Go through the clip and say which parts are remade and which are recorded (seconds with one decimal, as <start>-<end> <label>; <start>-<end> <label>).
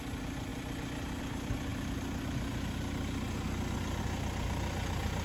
0.0-5.2 recorded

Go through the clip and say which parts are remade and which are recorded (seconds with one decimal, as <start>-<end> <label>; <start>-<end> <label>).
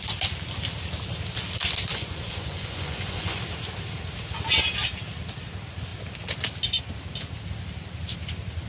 0.0-1.9 recorded; 1.9-3.4 remade; 3.4-8.7 recorded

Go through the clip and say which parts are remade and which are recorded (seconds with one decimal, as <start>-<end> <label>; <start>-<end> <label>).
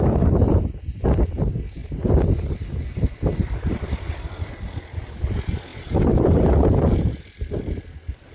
0.0-8.3 recorded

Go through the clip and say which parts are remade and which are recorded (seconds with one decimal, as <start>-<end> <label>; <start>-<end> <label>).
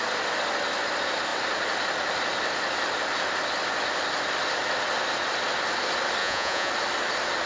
0.0-6.2 recorded; 6.2-6.7 remade; 6.7-7.5 recorded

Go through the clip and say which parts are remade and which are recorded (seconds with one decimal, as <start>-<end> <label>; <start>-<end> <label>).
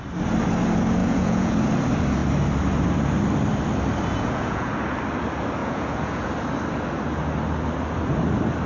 0.0-1.0 recorded; 1.0-1.5 remade; 1.5-4.1 recorded; 4.1-4.7 remade; 4.7-5.6 recorded; 5.6-6.3 remade; 6.3-8.7 recorded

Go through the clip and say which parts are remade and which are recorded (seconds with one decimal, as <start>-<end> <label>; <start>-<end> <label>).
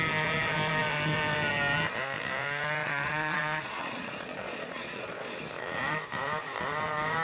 0.0-2.8 recorded; 2.8-5.4 remade; 5.4-7.2 recorded